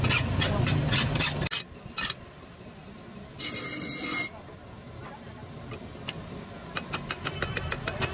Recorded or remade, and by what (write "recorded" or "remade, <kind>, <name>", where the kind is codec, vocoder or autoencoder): recorded